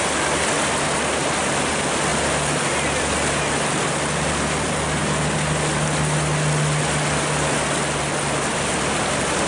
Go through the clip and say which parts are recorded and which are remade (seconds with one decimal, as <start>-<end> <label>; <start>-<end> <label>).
0.0-9.5 recorded